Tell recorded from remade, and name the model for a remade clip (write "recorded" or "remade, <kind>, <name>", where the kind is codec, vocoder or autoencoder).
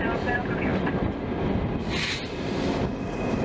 recorded